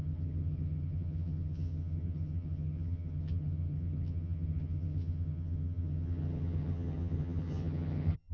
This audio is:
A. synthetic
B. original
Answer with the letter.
A